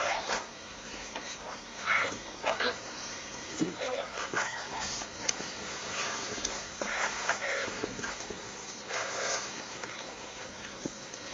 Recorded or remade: remade